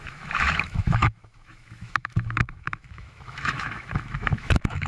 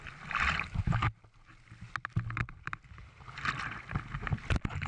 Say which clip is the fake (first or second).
first